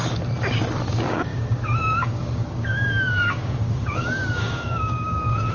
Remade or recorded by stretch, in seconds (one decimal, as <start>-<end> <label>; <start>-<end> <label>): 0.0-0.9 recorded; 0.9-5.5 remade